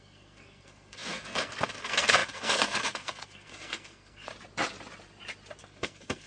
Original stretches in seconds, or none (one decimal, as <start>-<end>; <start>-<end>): 4.3-5.6